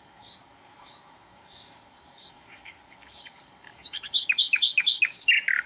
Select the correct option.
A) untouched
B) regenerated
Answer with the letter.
B